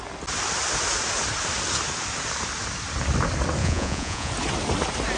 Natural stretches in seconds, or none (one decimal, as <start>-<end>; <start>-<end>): 0.0-3.6; 4.3-5.2